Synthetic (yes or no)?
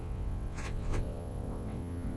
yes